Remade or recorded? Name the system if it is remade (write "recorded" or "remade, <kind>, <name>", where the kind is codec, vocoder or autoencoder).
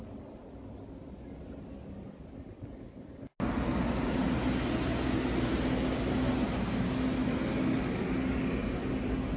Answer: recorded